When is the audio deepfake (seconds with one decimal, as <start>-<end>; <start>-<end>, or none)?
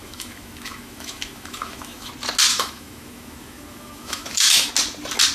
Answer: 0.0-2.1; 2.5-4.7